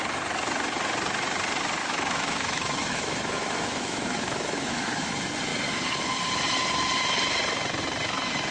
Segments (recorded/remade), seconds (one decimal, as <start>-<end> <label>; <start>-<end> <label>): 0.0-1.8 recorded; 1.8-5.1 remade; 5.1-8.5 recorded